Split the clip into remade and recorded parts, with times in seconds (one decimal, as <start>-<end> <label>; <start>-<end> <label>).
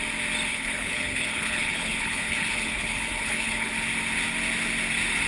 0.0-0.5 recorded; 0.5-3.7 remade; 3.7-5.3 recorded